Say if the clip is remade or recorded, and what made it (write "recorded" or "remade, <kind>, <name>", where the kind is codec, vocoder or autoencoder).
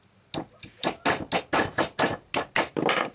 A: recorded